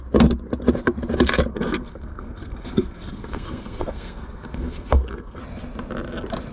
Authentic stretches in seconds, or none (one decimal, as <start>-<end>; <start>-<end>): 0.0-1.5; 5.4-6.5